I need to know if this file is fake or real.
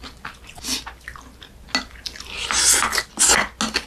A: real